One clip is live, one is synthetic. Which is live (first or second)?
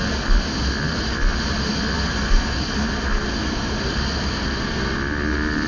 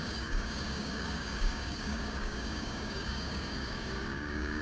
first